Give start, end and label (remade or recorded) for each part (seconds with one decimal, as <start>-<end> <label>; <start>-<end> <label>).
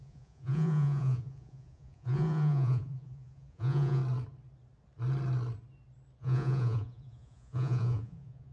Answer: 0.0-4.0 remade; 4.0-6.2 recorded; 6.2-8.5 remade